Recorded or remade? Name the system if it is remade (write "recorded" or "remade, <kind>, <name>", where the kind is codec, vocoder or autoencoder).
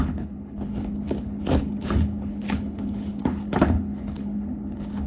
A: remade, codec, HILCodec